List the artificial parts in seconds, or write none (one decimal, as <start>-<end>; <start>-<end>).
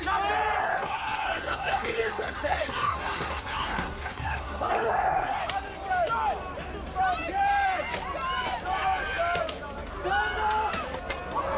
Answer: 0.6-5.4